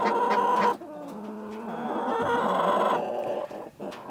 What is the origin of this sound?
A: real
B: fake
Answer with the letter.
A